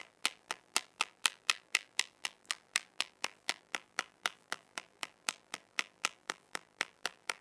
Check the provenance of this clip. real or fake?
fake